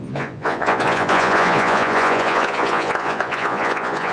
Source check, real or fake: fake